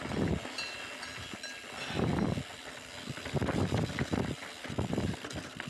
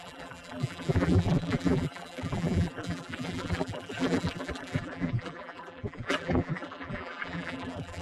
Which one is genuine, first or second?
first